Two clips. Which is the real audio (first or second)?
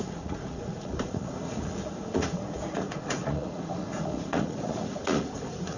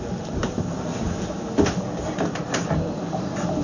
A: second